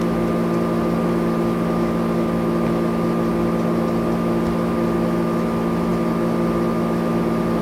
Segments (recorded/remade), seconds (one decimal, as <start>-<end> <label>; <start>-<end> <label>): 0.0-7.6 recorded

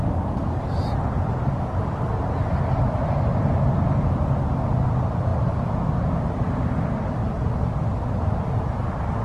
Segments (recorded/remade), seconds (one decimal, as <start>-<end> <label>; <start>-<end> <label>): 0.0-9.2 recorded

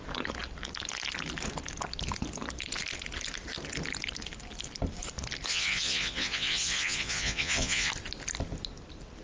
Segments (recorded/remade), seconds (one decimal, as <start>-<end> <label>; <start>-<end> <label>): 0.0-5.5 recorded; 5.5-7.9 remade; 7.9-9.2 recorded

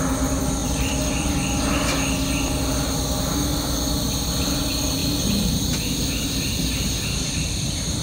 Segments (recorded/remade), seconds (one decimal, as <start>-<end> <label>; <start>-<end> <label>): 0.0-0.6 recorded; 0.6-1.3 remade; 1.3-5.0 recorded; 5.0-5.5 remade; 5.5-8.0 recorded

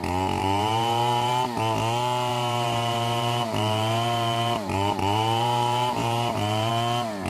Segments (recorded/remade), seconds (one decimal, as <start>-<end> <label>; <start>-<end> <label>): 0.0-0.4 recorded; 0.4-1.3 remade; 1.3-2.3 recorded; 2.3-6.7 remade; 6.7-7.3 recorded

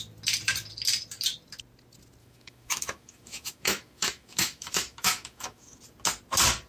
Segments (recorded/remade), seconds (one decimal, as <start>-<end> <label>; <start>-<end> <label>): 0.0-2.2 recorded; 2.2-5.8 remade; 5.8-6.7 recorded